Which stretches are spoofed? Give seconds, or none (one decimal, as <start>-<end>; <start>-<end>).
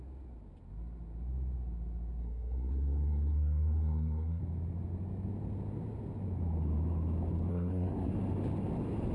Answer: 2.2-4.4; 7.5-8.1